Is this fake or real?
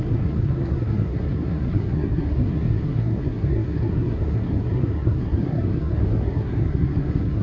fake